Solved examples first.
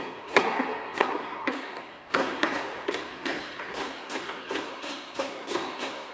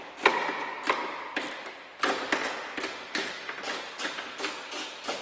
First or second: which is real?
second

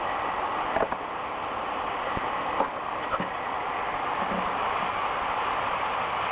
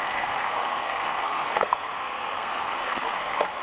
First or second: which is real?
first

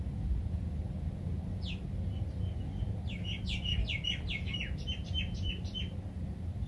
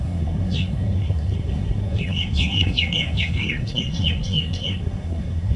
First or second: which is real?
first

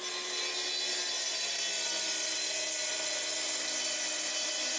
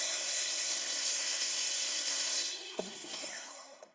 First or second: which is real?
first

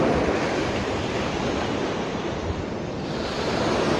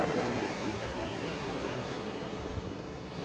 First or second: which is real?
first